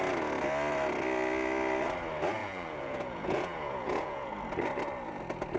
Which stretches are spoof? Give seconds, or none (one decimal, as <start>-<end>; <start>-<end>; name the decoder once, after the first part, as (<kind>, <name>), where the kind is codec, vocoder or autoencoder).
2.4-4.3 (vocoder, Vocos)